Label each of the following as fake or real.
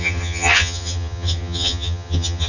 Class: fake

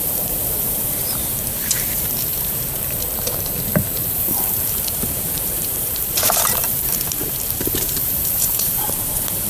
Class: fake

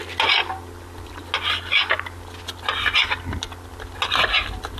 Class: real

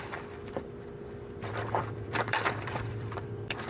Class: fake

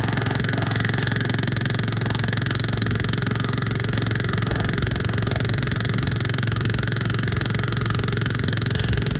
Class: fake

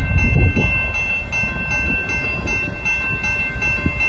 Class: real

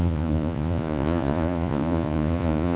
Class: fake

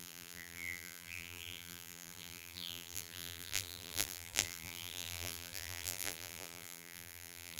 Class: fake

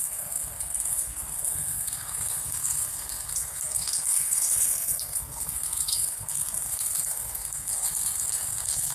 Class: fake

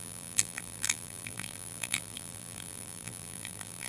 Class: fake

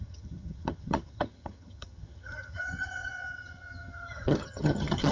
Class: fake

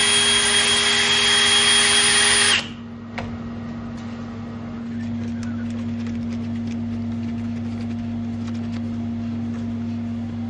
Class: real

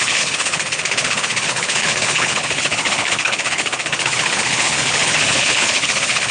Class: fake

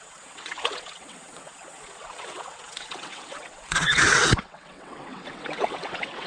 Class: fake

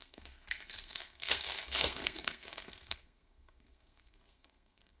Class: fake